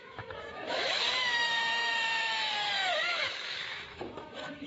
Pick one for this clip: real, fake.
fake